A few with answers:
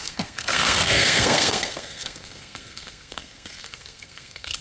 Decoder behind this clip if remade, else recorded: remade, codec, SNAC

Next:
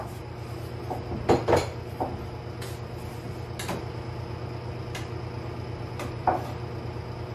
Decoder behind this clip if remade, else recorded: recorded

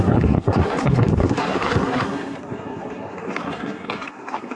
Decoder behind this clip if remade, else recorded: remade, codec, SNAC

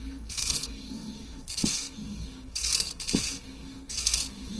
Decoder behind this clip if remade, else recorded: remade, codec, SNAC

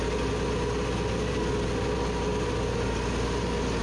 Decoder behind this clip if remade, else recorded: recorded